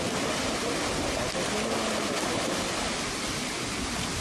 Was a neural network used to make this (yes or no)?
no